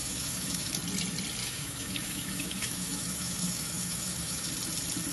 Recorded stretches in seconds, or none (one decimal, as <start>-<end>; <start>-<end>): 0.7-1.4; 4.5-5.1